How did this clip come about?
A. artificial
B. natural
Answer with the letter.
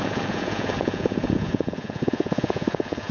A